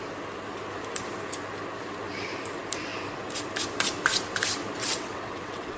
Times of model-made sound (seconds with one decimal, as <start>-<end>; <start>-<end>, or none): 4.8-5.8